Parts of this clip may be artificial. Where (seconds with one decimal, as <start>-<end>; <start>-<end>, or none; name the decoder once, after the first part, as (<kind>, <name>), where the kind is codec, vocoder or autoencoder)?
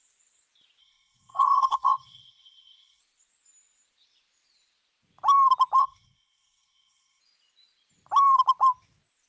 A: 0.8-3.0 (codec, SNAC); 5.8-7.2